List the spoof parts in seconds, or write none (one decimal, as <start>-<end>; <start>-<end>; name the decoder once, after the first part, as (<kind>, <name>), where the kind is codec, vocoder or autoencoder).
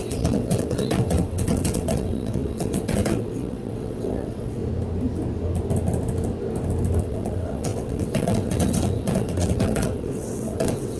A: 0.0-4.6 (vocoder, WaveNeXt); 7.0-11.0